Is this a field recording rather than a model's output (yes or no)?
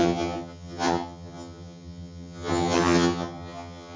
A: no